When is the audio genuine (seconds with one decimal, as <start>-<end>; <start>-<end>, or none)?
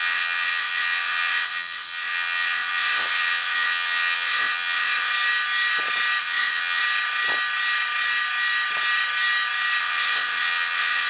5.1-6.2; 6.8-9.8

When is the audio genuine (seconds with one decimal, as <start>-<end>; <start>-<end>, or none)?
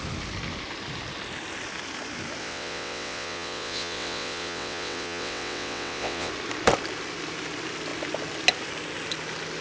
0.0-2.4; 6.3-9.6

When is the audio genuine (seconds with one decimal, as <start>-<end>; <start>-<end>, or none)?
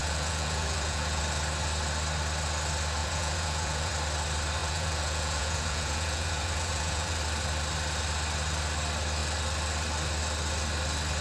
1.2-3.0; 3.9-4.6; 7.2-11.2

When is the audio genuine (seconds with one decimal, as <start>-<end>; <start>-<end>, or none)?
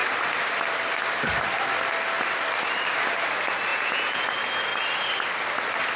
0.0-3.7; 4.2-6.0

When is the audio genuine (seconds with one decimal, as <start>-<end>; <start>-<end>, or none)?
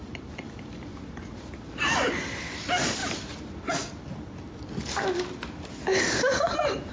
0.0-0.9; 2.6-3.0; 3.7-5.9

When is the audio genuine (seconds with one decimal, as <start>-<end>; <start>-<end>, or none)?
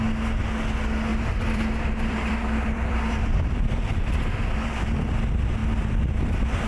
0.0-1.1; 5.1-5.6; 6.3-6.7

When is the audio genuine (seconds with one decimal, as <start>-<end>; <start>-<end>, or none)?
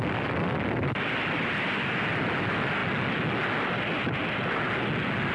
2.8-5.3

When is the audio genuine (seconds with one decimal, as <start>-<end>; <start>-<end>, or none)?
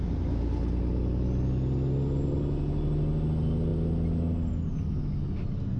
0.0-5.8